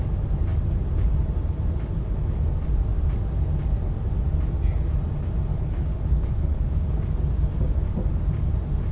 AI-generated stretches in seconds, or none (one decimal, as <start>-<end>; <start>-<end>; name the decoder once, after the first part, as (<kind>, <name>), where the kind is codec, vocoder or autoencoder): 5.5-7.0 (codec, HILCodec)